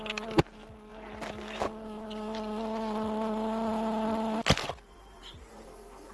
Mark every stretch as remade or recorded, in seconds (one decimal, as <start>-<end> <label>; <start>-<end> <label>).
0.0-5.4 recorded; 5.4-6.1 remade

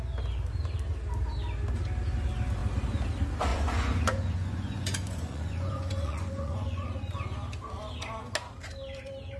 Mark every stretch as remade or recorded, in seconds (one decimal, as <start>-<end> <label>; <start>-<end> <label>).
0.0-3.5 recorded; 3.5-7.0 remade; 7.0-9.4 recorded

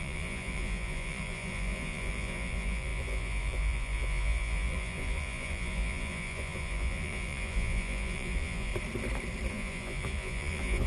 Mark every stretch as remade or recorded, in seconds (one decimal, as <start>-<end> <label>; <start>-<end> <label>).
0.0-8.7 remade; 8.7-9.5 recorded; 9.5-10.9 remade

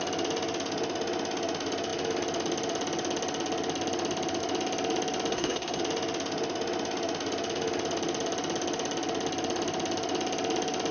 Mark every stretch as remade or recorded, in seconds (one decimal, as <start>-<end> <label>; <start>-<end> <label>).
0.0-5.3 recorded; 5.3-5.8 remade; 5.8-10.9 recorded

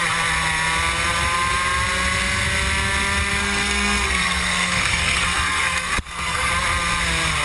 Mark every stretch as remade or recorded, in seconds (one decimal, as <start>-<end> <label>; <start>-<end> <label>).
0.0-3.4 recorded; 3.4-6.5 remade; 6.5-7.4 recorded

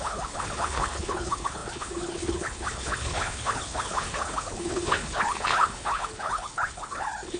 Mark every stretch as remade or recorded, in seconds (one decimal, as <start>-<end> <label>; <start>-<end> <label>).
0.0-7.4 remade